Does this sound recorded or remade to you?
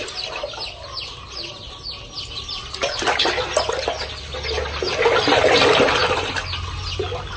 recorded